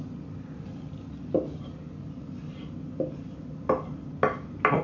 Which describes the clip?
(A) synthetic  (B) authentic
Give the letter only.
B